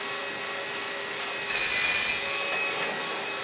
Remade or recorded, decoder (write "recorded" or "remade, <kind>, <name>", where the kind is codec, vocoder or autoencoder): recorded